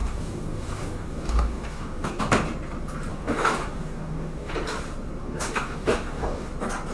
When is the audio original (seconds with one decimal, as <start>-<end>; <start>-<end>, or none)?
2.2-3.1; 4.5-5.2; 6.5-6.9